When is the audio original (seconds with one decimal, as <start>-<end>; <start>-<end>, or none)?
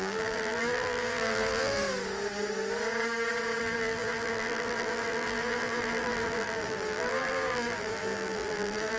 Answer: 1.8-3.6